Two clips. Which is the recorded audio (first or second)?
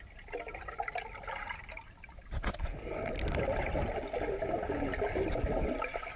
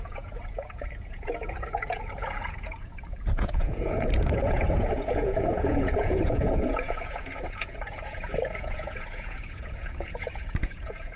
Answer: first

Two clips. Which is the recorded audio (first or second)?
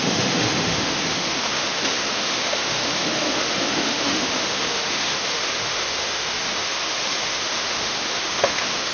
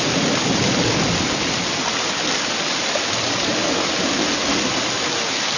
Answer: second